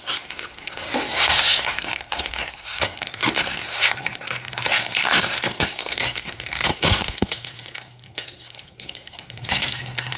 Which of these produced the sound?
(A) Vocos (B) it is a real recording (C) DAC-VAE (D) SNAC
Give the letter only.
D